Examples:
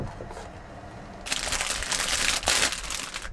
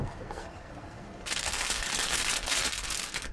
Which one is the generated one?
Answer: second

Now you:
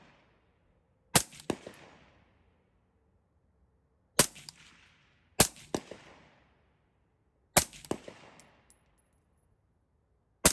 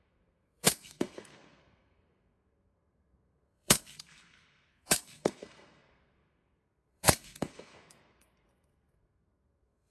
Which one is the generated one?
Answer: second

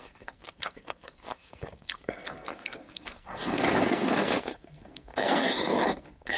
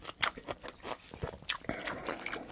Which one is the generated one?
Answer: first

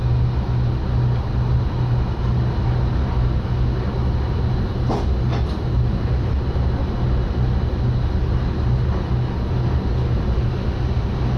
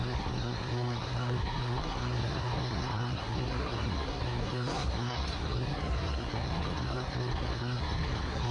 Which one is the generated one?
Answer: second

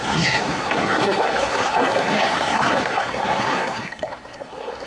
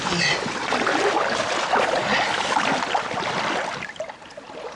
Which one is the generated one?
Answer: first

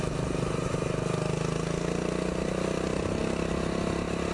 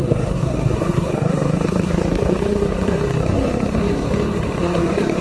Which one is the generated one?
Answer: second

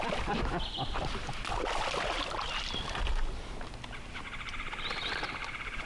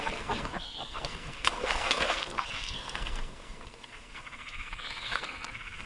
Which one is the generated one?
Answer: second